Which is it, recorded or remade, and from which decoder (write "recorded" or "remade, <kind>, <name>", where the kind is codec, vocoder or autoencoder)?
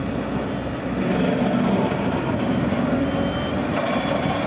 recorded